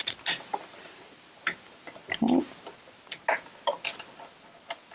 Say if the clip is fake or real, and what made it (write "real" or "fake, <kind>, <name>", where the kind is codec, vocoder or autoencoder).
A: real